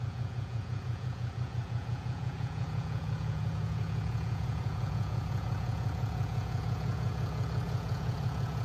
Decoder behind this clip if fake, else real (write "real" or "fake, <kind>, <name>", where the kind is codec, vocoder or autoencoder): fake, vocoder, Vocos